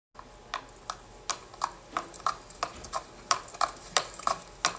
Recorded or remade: recorded